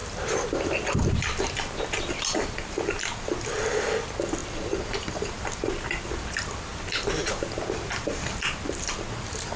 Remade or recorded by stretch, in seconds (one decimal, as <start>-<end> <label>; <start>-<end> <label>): 0.0-1.1 remade; 1.1-6.7 recorded; 6.7-7.2 remade; 7.2-9.6 recorded